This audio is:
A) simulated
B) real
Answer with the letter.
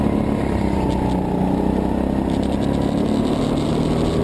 B